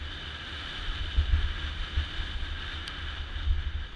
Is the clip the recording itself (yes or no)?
yes